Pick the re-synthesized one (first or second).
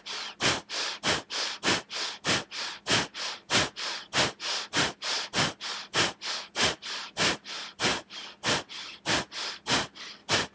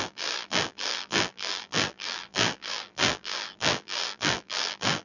second